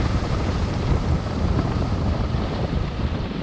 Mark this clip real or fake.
fake